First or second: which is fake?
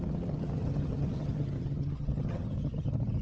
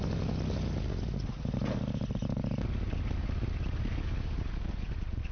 first